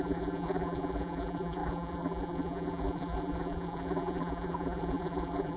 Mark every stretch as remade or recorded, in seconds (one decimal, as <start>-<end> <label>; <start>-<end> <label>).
0.0-5.6 remade